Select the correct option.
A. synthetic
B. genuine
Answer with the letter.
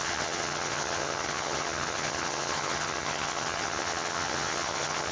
A